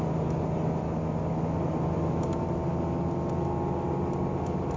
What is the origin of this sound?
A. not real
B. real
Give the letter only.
B